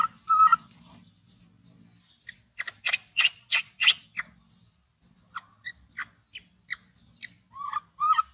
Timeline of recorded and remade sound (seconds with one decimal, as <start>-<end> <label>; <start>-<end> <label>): 0.0-3.0 recorded; 3.0-4.0 remade; 4.0-8.3 recorded